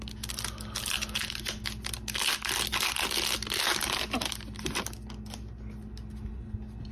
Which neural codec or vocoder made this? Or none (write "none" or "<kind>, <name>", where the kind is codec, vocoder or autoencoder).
none